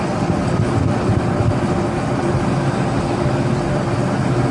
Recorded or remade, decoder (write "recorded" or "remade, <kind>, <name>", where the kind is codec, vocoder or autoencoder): recorded